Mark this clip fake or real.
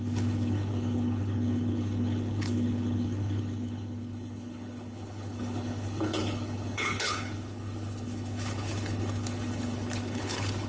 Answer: fake